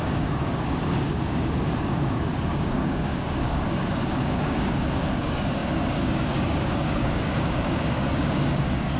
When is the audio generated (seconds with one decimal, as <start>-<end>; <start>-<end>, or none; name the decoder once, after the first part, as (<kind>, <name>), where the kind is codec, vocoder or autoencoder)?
0.0-9.0 (codec, DAC)